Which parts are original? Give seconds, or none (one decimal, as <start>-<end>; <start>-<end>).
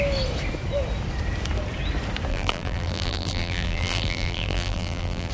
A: 0.0-2.3